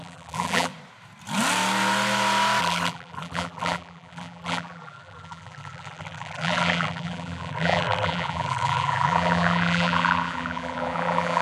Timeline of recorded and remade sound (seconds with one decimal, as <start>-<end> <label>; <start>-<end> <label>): 0.0-0.7 remade; 0.7-2.6 recorded; 2.6-11.4 remade